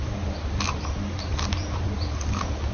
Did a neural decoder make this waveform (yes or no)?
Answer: no